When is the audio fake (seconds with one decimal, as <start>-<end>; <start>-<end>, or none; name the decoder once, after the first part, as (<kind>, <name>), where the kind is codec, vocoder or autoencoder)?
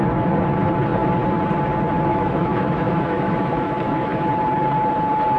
2.1-4.3 (autoencoder, DAC-VAE)